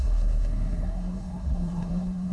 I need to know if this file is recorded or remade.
remade